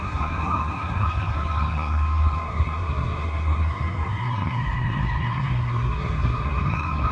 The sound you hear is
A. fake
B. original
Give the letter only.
A